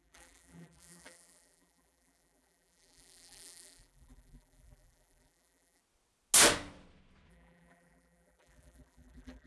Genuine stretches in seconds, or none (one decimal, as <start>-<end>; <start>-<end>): 5.8-7.3